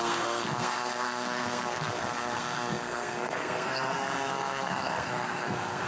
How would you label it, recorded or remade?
remade